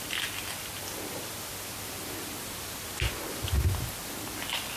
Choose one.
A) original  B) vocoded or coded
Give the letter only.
A